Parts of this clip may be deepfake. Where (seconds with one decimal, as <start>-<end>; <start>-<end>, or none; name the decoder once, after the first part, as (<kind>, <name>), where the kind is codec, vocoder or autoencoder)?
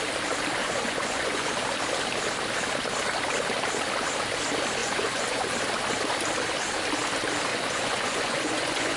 0.6-1.5 (vocoder, Vocos); 4.8-5.5; 7.5-9.0